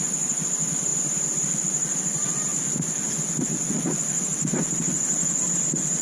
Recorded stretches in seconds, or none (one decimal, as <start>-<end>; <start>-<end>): 2.3-4.8